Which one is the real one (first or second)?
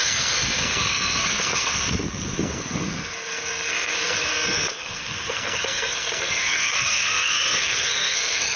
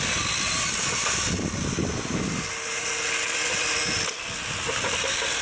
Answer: second